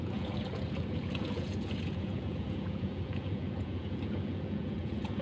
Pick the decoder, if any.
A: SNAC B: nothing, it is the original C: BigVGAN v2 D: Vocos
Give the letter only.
D